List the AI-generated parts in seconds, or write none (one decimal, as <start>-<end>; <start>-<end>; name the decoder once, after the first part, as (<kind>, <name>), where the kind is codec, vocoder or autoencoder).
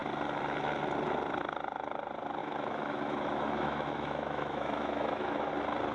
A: 2.4-5.5 (autoencoder, DAC-VAE)